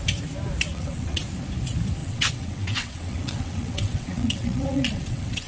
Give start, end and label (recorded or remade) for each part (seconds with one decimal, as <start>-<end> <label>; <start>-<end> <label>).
0.0-0.7 recorded; 0.7-1.2 remade; 1.2-2.0 recorded; 2.0-5.5 remade